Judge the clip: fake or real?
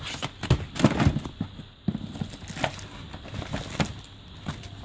real